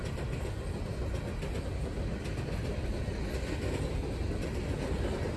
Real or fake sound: real